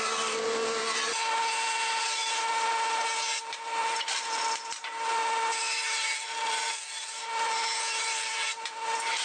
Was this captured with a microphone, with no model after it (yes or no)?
no